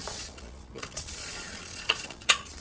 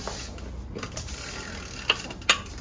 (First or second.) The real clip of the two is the second